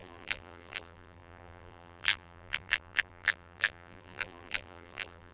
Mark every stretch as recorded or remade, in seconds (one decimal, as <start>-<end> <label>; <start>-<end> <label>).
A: 0.0-5.3 remade